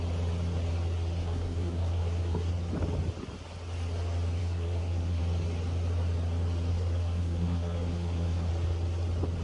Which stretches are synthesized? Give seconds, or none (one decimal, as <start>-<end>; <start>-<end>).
1.2-2.5; 4.4-5.2; 6.7-8.5